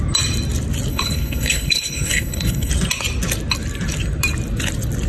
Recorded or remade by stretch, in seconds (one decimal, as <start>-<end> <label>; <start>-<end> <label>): 0.0-0.9 recorded; 0.9-2.7 remade; 2.7-5.1 recorded